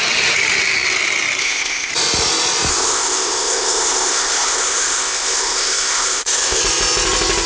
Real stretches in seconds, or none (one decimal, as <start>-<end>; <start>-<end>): 0.0-1.4; 1.9-2.7; 6.6-7.5